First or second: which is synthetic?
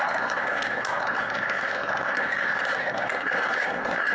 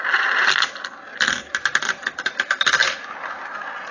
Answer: first